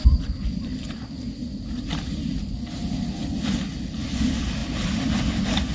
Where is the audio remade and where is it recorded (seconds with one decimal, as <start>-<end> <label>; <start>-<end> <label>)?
0.0-5.7 recorded